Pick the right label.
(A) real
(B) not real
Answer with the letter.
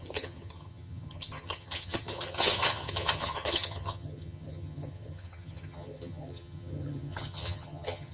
B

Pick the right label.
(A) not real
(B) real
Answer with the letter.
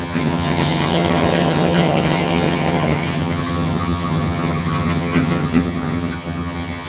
A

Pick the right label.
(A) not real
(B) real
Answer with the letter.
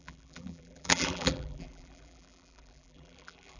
A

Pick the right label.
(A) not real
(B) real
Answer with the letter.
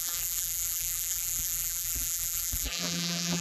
A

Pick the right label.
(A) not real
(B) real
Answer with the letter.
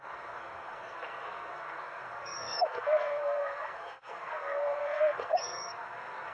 A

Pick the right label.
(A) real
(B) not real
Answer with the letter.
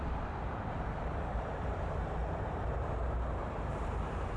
B